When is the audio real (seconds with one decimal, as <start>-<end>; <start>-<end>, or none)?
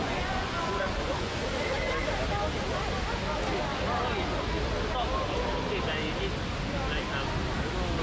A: 1.4-8.0